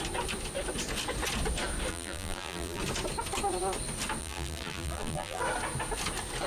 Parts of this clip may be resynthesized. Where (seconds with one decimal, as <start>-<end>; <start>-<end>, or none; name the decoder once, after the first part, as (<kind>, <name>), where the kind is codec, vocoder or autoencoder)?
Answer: 1.9-2.8 (vocoder, BigVGAN v2); 4.2-5.4